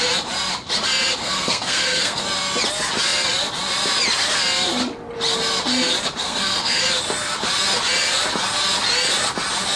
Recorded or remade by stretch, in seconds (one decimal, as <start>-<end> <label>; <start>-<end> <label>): 0.0-1.2 recorded; 1.2-2.2 remade; 2.2-6.2 recorded; 6.2-6.8 remade; 6.8-9.8 recorded